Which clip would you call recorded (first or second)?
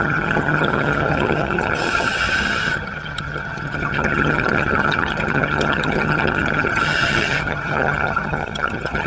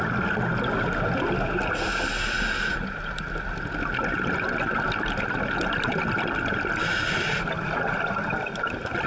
second